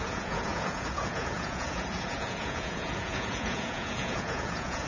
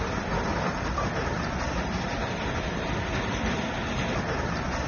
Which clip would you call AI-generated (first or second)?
first